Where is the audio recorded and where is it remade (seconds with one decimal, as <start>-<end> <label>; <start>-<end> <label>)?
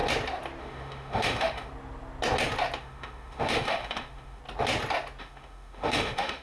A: 0.0-0.6 recorded; 0.6-1.7 remade; 1.7-2.8 recorded; 2.8-4.4 remade; 4.4-5.2 recorded; 5.2-6.4 remade